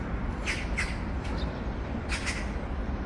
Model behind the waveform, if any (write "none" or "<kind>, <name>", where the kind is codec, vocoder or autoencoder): none